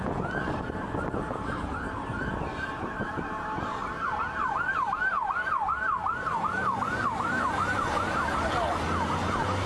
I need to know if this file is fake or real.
real